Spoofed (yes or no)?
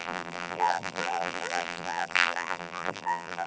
yes